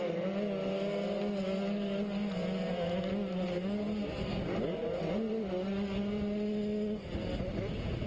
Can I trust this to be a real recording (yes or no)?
yes